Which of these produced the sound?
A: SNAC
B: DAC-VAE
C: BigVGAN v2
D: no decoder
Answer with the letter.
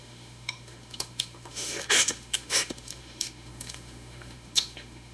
B